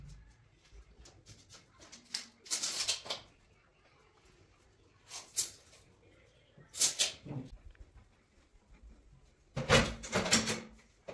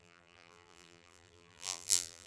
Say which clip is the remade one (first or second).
second